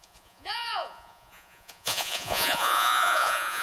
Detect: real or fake fake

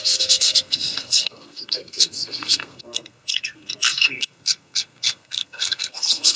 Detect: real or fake fake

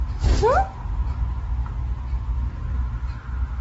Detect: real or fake real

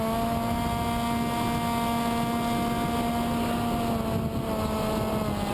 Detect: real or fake real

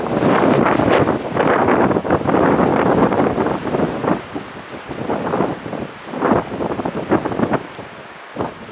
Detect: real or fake real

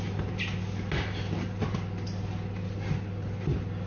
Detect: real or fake real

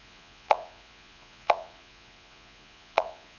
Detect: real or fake fake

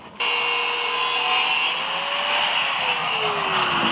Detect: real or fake real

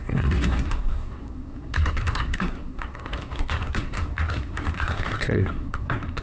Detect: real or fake fake